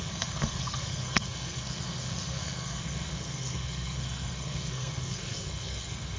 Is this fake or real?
fake